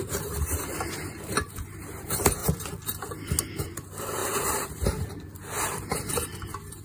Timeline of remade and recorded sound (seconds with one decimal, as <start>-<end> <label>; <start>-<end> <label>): 0.0-2.4 remade; 2.4-3.4 recorded; 3.4-6.8 remade